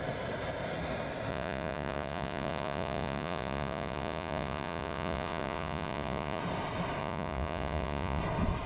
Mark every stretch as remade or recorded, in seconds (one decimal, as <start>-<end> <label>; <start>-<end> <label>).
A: 0.0-1.3 recorded; 1.3-6.4 remade; 6.4-7.0 recorded; 7.0-8.2 remade; 8.2-8.7 recorded

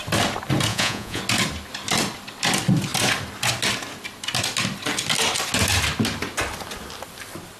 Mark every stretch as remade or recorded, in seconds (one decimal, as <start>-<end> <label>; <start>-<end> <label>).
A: 0.0-0.7 recorded; 0.7-1.2 remade; 1.2-7.6 recorded

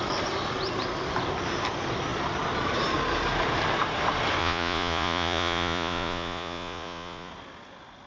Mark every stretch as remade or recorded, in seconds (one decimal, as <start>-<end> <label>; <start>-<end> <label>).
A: 0.0-4.4 recorded; 4.4-7.3 remade; 7.3-8.1 recorded

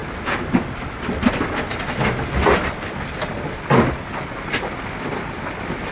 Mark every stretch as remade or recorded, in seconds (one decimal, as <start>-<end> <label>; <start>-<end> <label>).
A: 0.0-5.9 recorded

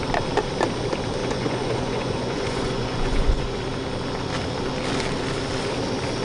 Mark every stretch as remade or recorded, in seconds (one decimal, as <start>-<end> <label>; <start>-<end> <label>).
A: 0.0-1.2 recorded; 1.2-3.6 remade; 3.6-6.2 recorded

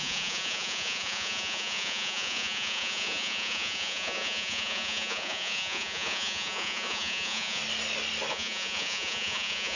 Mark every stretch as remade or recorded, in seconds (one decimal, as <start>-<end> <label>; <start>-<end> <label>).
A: 0.0-7.6 remade; 7.6-8.3 recorded; 8.3-9.8 remade